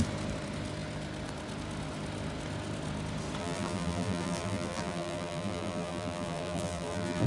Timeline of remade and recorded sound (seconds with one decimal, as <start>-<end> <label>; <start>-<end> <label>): 0.0-3.4 recorded; 3.4-7.3 remade